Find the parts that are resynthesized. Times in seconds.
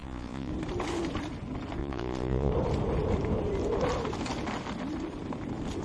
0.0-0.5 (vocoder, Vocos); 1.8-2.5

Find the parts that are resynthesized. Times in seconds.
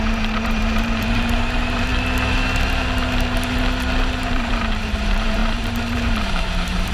0.0-1.9 (vocoder, BigVGAN v2); 4.1-6.9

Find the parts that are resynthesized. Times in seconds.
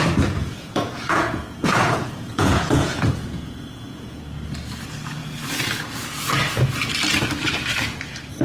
0.4-4.2 (vocoder, Vocos)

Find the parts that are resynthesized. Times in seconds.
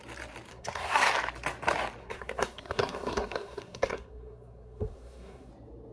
0.5-1.1 (codec, SNAC); 2.0-5.5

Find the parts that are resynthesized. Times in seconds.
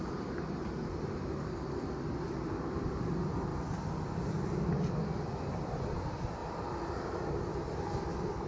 0.0-8.5 (vocoder, BigVGAN v2)